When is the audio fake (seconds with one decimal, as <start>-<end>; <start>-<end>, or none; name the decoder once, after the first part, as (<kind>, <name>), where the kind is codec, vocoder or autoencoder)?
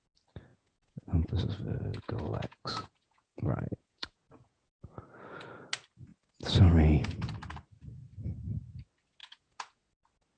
0.5-1.4 (vocoder, Vocos); 1.9-5.0; 9.2-9.8